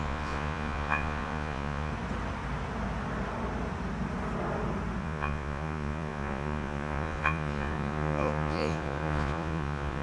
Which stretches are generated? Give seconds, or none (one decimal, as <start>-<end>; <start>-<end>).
0.0-1.9; 5.0-10.0